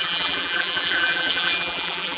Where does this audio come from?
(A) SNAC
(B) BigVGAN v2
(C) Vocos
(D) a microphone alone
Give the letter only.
B